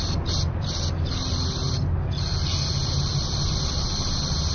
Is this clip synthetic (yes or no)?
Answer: no